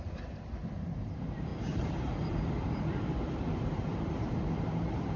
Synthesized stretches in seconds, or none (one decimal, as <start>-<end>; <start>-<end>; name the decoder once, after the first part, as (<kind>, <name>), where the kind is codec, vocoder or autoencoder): 0.0-5.2 (vocoder, BigVGAN v2)

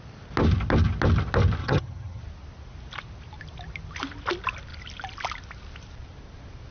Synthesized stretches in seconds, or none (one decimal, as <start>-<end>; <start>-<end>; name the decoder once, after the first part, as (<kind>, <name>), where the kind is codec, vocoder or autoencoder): 1.6-2.2 (vocoder, HiFi-GAN)

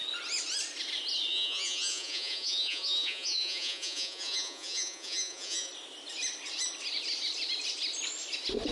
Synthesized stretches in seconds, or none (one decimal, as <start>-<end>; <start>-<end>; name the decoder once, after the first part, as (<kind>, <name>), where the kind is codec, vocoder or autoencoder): 1.3-5.7 (vocoder, Vocos)

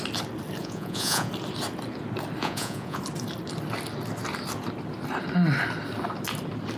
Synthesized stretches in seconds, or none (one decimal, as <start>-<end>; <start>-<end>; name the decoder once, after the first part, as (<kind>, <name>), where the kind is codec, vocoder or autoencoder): 0.6-1.3 (vocoder, Vocos); 2.4-3.0

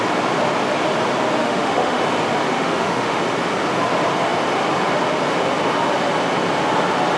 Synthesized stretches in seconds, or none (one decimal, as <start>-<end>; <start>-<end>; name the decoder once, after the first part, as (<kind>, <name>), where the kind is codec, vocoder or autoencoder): 1.4-2.0 (autoencoder, DAC-VAE); 2.6-3.2

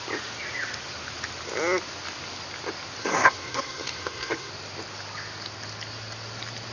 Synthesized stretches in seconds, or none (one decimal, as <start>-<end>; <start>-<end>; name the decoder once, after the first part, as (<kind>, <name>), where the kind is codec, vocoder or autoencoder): 3.0-4.5 (codec, SNAC)

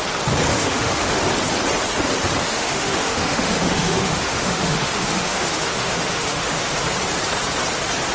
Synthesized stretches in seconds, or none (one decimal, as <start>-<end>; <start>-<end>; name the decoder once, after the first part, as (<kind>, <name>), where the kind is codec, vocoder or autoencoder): 0.5-1.2 (autoencoder, DAC-VAE); 2.4-6.7

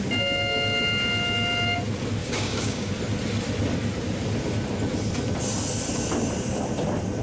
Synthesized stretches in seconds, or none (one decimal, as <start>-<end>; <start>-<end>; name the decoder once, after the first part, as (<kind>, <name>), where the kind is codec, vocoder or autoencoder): 2.2-2.9 (codec, DAC)